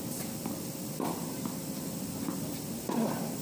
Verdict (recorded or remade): recorded